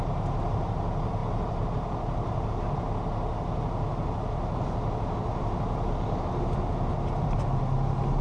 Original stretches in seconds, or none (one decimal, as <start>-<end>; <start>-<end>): 0.0-8.2